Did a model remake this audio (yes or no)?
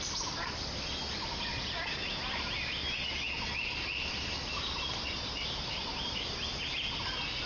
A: no